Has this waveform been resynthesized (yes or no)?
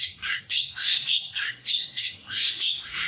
yes